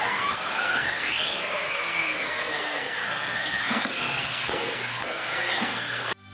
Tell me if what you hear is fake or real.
fake